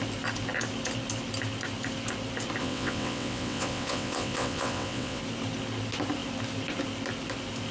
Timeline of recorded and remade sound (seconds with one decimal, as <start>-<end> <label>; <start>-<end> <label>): 0.0-2.6 recorded; 2.6-5.2 remade; 5.2-7.7 recorded